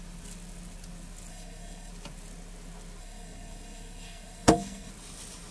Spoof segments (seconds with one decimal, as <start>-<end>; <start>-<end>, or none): 1.3-1.9; 3.0-4.9